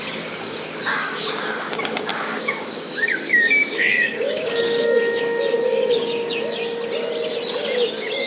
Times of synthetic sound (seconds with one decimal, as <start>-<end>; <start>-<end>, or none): 0.0-6.6; 7.9-8.3